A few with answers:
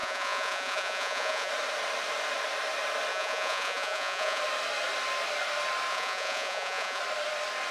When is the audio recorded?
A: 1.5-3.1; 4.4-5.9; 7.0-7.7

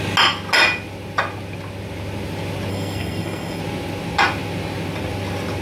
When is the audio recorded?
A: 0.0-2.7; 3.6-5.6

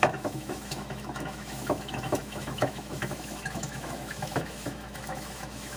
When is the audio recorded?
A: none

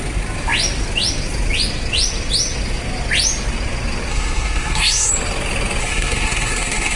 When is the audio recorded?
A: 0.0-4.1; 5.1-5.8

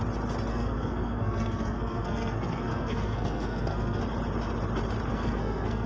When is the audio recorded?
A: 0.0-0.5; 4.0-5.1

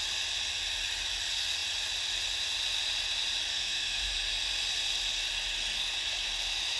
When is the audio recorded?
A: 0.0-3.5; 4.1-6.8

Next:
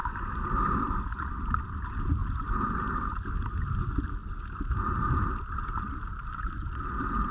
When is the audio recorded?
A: 0.0-0.7; 2.2-2.7; 4.2-6.3